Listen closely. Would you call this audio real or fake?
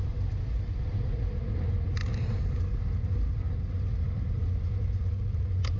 real